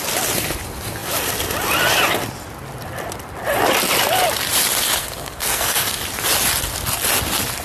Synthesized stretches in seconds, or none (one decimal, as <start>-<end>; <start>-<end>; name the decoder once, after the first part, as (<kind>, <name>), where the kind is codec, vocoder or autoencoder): 5.0-6.0 (codec, SNAC)